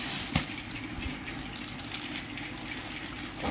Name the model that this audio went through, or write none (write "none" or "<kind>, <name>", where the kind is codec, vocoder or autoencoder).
none